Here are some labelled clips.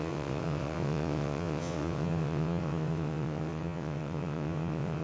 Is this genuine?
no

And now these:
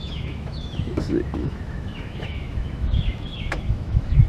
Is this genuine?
no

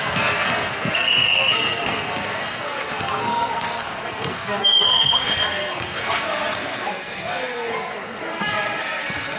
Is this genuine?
no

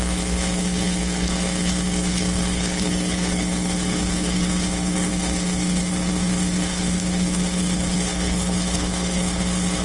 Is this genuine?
no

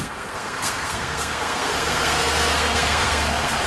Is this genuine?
no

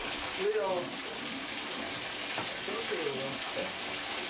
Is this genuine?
yes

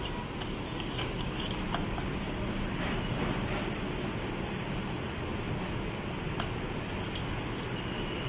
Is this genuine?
yes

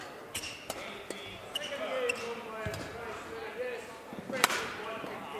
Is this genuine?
yes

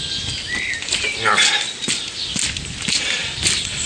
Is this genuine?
yes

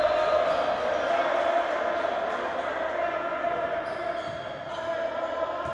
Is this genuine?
yes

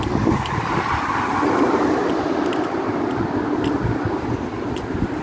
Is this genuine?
yes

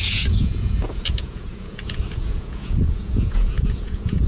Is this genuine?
no